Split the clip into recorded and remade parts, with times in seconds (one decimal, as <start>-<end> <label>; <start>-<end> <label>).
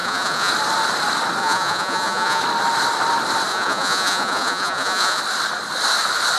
0.0-0.5 remade; 0.5-1.4 recorded; 1.4-2.4 remade; 2.4-3.5 recorded; 3.5-5.2 remade; 5.2-6.4 recorded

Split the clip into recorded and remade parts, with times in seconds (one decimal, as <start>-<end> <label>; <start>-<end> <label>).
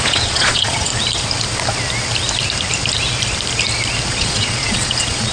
0.0-0.9 remade; 0.9-4.1 recorded; 4.1-5.3 remade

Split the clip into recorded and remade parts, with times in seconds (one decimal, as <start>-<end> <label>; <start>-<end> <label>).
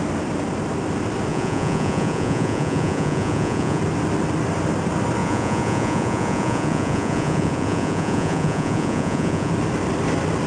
0.0-1.3 recorded; 1.3-3.8 remade; 3.8-5.2 recorded; 5.2-9.5 remade; 9.5-10.5 recorded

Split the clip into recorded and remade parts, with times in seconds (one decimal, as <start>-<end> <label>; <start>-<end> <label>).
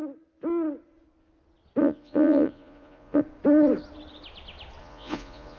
0.0-1.8 recorded; 1.8-3.2 remade; 3.2-4.8 recorded; 4.8-5.6 remade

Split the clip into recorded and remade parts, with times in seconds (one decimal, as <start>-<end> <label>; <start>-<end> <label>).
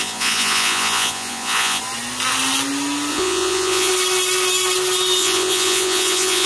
0.0-1.8 remade; 1.8-3.1 recorded; 3.1-3.9 remade; 3.9-5.2 recorded; 5.2-6.5 remade